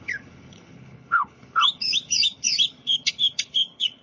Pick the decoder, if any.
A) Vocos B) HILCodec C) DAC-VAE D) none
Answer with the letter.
B